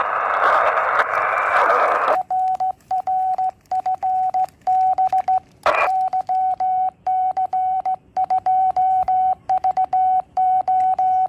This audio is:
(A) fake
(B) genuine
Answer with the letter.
A